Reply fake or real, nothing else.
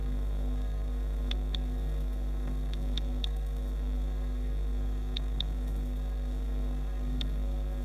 fake